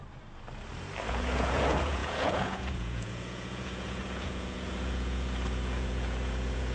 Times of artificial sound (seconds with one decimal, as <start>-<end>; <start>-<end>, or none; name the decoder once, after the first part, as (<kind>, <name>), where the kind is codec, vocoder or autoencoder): 1.1-6.7 (vocoder, Vocos)

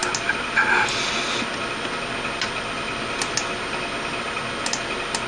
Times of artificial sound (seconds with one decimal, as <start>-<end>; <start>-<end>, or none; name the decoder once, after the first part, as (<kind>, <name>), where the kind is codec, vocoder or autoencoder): none

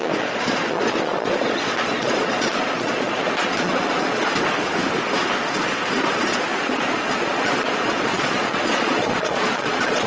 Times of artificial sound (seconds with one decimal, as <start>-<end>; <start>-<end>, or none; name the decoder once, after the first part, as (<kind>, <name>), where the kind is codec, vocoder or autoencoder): 0.0-4.3 (vocoder, Vocos); 6.1-10.1